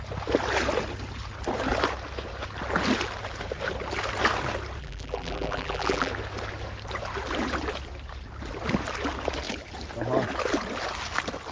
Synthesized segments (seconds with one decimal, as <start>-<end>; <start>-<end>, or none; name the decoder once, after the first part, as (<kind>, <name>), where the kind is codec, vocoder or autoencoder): 4.8-6.1 (vocoder, BigVGAN v2)